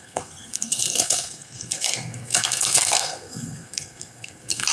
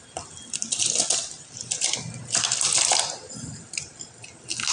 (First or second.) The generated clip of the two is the first